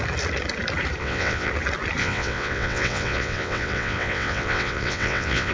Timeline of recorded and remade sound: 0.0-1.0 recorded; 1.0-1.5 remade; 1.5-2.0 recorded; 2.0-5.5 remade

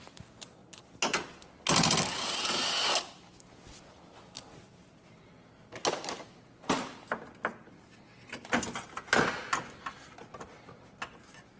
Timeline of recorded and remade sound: 0.0-11.6 recorded

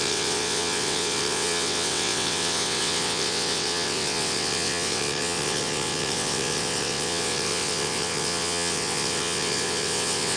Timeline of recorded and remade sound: 0.0-10.4 remade

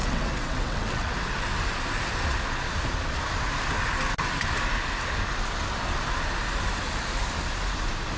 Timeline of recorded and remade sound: 0.0-1.1 remade; 1.1-8.2 recorded

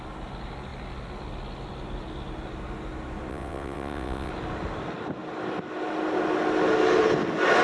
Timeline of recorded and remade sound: 0.0-3.3 recorded; 3.3-4.3 remade; 4.3-7.6 recorded

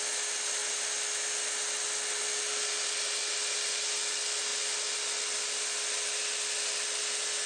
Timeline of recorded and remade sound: 0.0-7.5 recorded

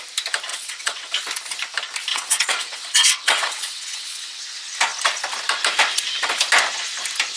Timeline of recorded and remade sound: 0.0-0.5 recorded; 0.5-1.1 remade; 1.1-2.1 recorded; 2.1-4.4 remade; 4.4-7.4 recorded